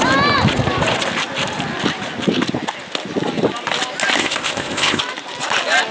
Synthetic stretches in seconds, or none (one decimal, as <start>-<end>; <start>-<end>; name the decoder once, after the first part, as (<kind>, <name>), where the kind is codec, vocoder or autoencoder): 4.2-5.0 (codec, ZipCodec)